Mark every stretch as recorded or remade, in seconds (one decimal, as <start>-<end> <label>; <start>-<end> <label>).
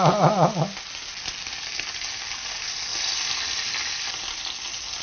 0.0-5.0 recorded